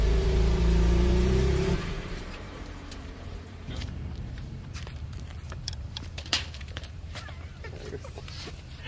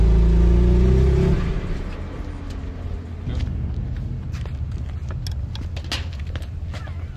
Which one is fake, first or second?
first